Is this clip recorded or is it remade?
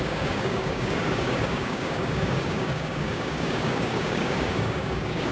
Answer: remade